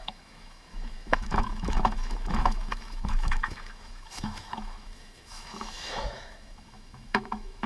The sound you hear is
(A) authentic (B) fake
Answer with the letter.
B